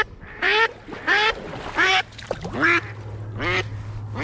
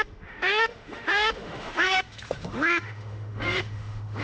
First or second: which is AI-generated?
second